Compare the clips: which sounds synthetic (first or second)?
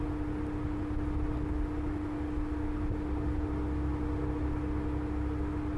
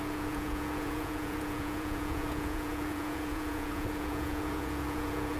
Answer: second